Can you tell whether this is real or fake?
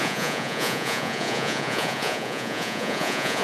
fake